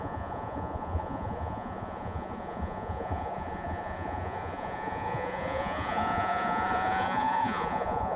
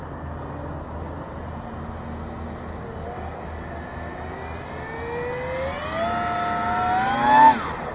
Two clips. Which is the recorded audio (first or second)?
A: second